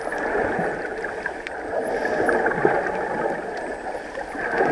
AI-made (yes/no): no